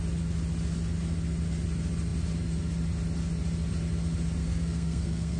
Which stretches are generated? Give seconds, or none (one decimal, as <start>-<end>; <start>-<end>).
4.4-5.4